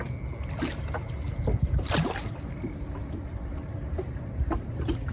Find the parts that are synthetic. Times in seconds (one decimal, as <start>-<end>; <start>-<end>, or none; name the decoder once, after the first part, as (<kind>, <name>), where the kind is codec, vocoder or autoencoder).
1.6-5.1 (vocoder, BigVGAN v2)